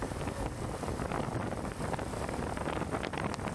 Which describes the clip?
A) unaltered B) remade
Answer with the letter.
A